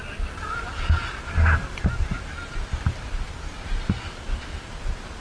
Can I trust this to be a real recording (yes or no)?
yes